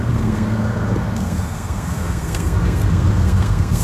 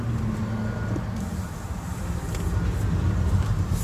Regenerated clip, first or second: first